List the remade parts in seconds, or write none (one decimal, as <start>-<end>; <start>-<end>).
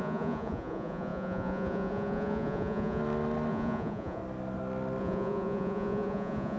0.0-3.0; 3.5-4.2; 5.0-6.6